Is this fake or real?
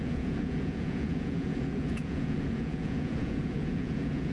fake